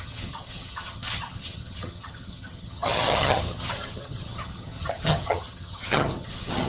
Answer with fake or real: fake